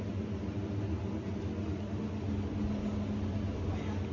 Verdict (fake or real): real